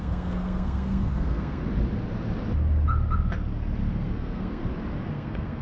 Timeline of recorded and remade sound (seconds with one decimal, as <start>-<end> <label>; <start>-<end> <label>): 0.0-1.6 remade; 1.6-3.9 recorded; 3.9-4.6 remade; 4.6-5.1 recorded; 5.1-5.6 remade